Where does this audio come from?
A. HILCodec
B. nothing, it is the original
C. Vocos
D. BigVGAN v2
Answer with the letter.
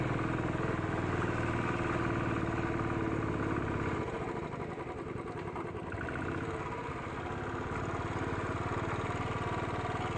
B